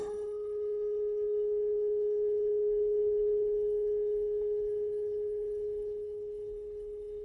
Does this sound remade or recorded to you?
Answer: remade